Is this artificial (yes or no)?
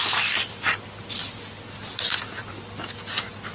no